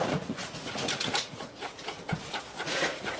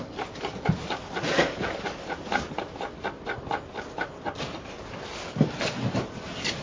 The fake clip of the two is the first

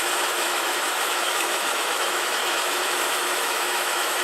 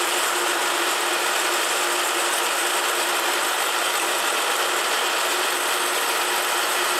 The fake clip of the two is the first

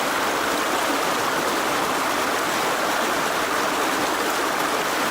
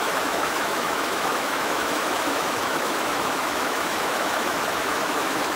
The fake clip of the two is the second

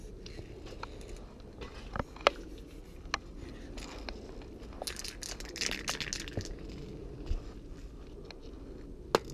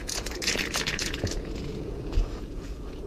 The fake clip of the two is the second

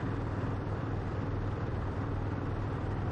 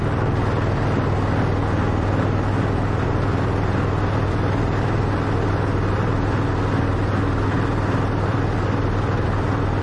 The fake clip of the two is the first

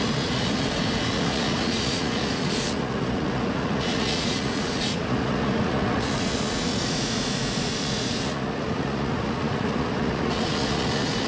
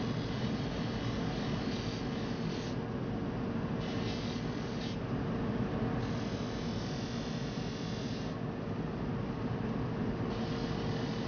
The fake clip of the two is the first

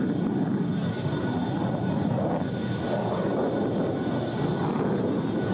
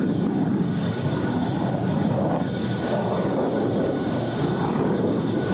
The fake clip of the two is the second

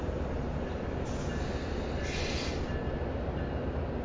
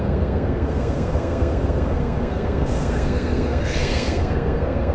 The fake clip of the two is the second